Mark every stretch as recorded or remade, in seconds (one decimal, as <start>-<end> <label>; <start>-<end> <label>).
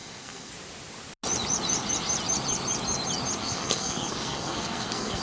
0.0-0.5 remade; 0.5-3.4 recorded; 3.4-5.2 remade